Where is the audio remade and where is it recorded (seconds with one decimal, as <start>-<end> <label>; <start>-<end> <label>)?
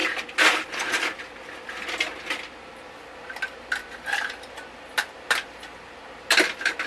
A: 0.0-6.9 recorded